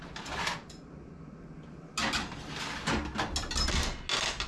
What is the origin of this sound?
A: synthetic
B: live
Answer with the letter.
B